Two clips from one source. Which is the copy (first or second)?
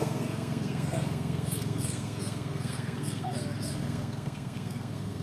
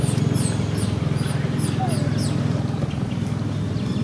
first